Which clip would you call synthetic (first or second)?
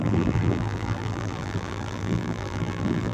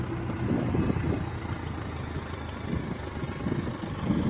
first